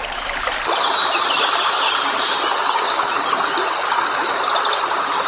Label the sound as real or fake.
real